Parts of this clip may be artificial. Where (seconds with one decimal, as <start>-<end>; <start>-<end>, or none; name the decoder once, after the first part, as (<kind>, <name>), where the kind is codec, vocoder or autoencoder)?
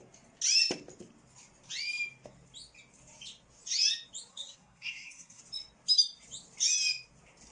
4.3-5.4 (codec, SNAC)